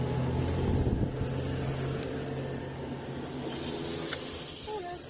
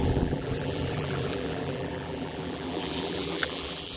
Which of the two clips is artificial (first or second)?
second